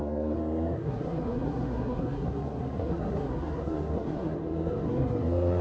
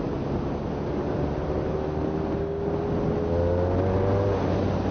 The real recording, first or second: second